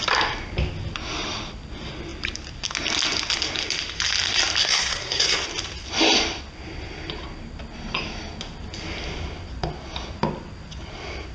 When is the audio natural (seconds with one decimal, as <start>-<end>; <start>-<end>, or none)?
0.0-4.6; 5.4-11.3